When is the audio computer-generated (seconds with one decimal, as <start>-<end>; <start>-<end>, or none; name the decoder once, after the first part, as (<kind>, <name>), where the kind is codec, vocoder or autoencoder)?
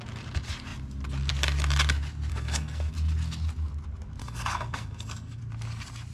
2.3-2.9 (codec, SNAC); 4.2-5.4